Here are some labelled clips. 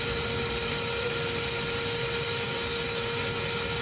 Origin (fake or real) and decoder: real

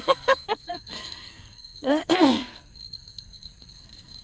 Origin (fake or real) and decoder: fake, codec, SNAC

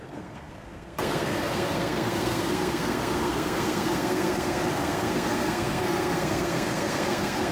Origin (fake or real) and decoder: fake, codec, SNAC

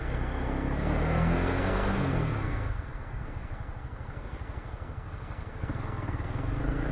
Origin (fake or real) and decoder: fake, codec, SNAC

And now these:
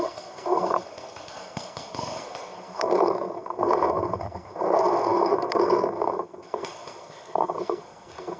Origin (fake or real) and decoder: fake, codec, SNAC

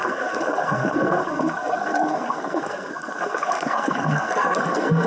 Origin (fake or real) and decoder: fake, codec, SNAC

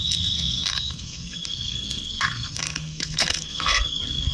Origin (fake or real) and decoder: fake, codec, SNAC